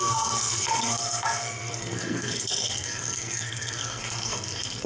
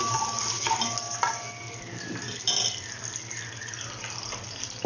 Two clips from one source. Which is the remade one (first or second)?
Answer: first